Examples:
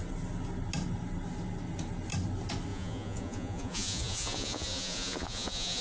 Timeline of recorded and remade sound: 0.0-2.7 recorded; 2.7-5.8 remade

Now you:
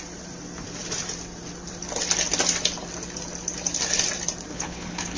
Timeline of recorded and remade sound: 0.0-4.5 recorded; 4.5-5.2 remade

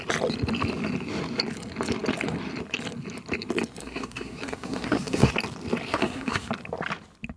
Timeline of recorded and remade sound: 0.0-3.8 recorded; 3.8-5.3 remade; 5.3-5.9 recorded; 5.9-6.5 remade; 6.5-7.4 recorded

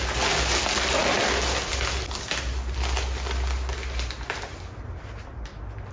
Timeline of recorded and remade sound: 0.0-5.9 recorded

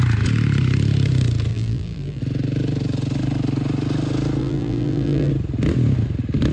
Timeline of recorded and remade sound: 0.0-1.5 recorded; 1.5-2.2 remade; 2.2-4.4 recorded; 4.4-5.3 remade; 5.3-6.5 recorded

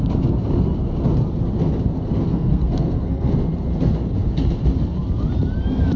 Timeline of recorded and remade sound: 0.0-2.3 recorded; 2.3-3.3 remade; 3.3-6.0 recorded